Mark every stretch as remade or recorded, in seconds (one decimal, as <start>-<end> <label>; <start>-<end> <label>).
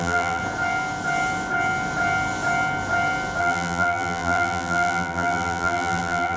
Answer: 0.0-0.4 remade; 0.4-3.4 recorded; 3.4-6.4 remade